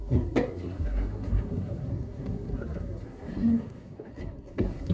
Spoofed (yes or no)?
yes